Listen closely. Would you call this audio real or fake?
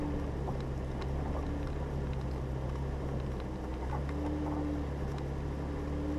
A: real